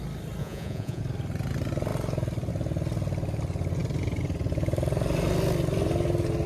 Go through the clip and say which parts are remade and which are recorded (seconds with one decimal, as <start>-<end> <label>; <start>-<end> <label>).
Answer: 0.0-0.4 recorded; 0.4-1.0 remade; 1.0-6.5 recorded